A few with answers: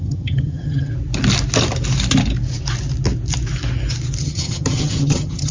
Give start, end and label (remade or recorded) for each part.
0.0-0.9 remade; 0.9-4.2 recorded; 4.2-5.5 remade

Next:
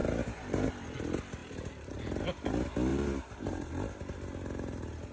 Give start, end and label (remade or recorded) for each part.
0.0-0.7 remade; 0.7-1.4 recorded; 1.4-2.0 remade; 2.0-2.9 recorded; 2.9-3.7 remade; 3.7-5.1 recorded

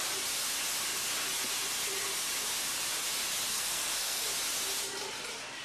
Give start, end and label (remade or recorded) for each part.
0.0-3.5 recorded; 3.5-4.3 remade; 4.3-5.6 recorded

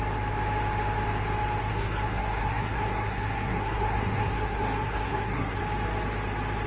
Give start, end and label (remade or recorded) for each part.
0.0-1.6 recorded; 1.6-5.6 remade; 5.6-6.7 recorded

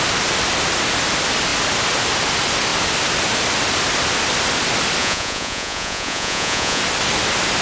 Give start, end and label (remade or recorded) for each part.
0.0-5.0 recorded; 5.0-6.8 remade; 6.8-7.6 recorded

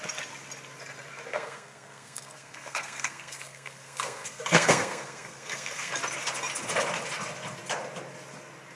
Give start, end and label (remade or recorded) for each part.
0.0-1.3 recorded; 1.3-5.9 remade; 5.9-8.8 recorded

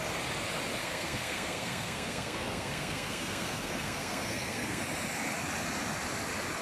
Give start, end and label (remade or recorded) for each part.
0.0-0.8 recorded; 0.8-4.8 remade; 4.8-6.6 recorded

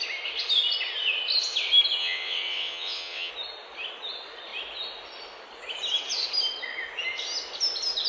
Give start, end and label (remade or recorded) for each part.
0.0-2.0 recorded; 2.0-3.3 remade; 3.3-8.1 recorded